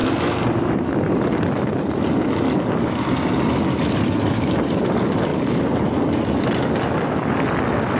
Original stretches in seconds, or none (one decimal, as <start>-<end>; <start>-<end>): 0.0-8.0